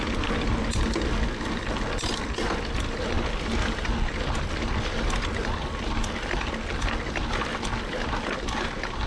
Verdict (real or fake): real